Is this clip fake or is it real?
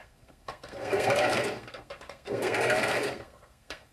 fake